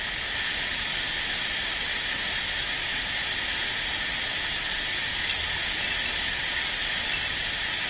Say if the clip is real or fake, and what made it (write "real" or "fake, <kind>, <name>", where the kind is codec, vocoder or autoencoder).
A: real